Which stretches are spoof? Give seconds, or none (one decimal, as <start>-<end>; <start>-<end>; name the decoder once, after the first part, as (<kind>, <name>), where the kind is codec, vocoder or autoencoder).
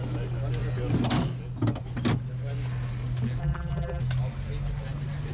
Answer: 3.4-4.0 (vocoder, BigVGAN v2)